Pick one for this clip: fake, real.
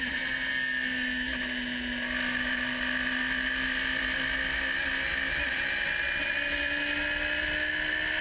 real